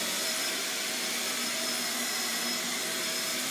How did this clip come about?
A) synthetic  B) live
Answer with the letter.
A